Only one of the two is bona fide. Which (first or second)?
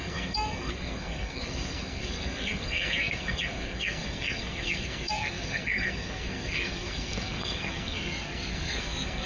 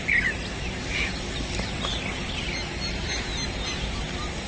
second